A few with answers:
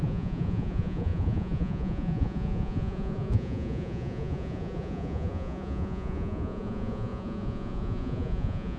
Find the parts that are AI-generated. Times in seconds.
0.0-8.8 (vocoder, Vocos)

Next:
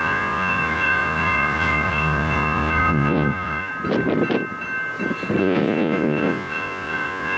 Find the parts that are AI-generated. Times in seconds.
0.0-3.7 (vocoder, Vocos); 5.4-7.4

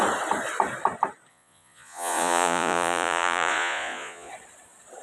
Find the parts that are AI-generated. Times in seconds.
1.3-4.3 (vocoder, Vocos)